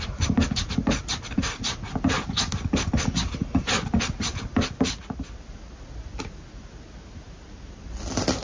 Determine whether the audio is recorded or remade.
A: recorded